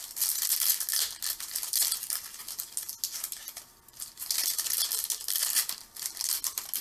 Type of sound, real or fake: real